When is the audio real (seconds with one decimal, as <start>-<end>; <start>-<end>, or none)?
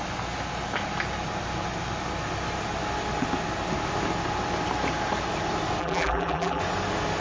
0.0-5.8; 6.6-7.2